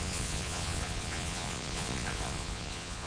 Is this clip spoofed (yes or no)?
yes